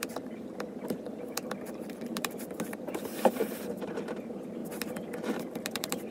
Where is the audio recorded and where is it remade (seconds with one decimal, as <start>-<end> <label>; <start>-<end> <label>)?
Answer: 0.0-4.6 remade; 4.6-5.3 recorded; 5.3-6.1 remade